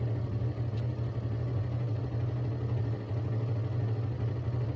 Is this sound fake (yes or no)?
no